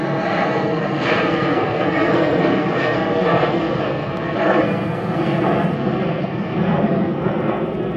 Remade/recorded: remade